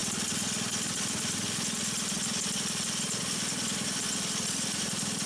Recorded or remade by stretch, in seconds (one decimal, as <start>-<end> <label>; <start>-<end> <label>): 0.0-5.3 recorded